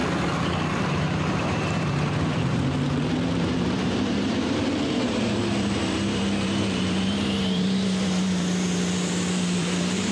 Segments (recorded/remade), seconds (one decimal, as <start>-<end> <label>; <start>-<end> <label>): 0.0-0.9 recorded; 0.9-10.1 remade